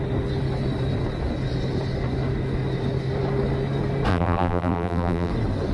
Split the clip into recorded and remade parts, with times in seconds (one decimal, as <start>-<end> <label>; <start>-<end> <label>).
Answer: 0.0-4.1 recorded; 4.1-5.3 remade; 5.3-5.7 recorded